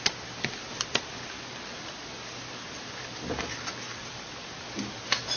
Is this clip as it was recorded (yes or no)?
yes